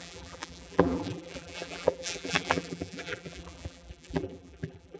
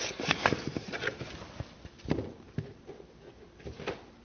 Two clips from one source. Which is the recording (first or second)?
second